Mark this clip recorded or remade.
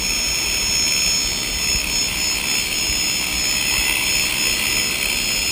recorded